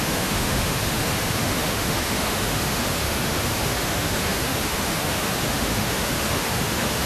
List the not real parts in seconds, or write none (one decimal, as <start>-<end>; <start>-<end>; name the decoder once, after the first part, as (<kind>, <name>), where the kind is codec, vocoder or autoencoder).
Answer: 0.0-7.1 (autoencoder, DAC-VAE)